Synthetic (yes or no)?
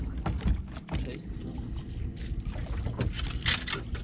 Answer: no